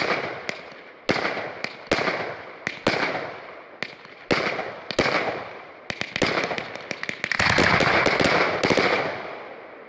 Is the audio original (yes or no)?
yes